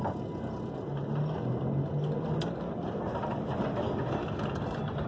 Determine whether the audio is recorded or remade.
recorded